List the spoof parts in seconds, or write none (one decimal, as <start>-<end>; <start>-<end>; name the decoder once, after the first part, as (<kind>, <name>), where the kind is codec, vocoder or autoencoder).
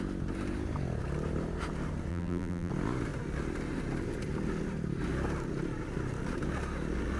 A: 2.1-2.7 (vocoder, BigVGAN v2)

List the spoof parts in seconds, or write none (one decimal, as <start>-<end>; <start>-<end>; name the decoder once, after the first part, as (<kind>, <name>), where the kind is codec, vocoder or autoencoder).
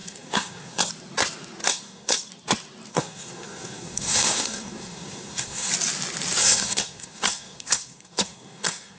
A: 0.0-0.9 (codec, SNAC); 1.6-2.3; 2.9-5.7; 6.4-9.0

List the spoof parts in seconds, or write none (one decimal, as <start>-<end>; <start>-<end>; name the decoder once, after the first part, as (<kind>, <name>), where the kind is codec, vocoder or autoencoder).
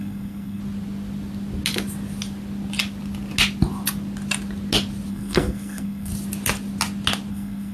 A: 0.0-0.6 (codec, SNAC); 5.1-6.1; 7.3-7.7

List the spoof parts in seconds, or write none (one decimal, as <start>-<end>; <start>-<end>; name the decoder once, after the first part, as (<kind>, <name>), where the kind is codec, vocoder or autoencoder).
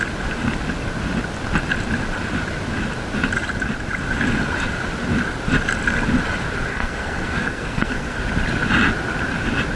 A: 6.7-8.2 (codec, SNAC)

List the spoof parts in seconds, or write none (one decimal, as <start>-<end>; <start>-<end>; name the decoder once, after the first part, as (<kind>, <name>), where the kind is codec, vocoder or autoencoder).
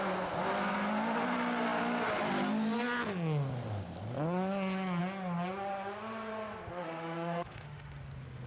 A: 6.7-8.0 (autoencoder, DAC-VAE)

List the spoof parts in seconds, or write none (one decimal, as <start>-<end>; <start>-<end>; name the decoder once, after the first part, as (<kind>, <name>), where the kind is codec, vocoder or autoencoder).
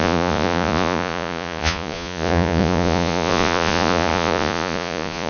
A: 0.0-5.3 (vocoder, Vocos)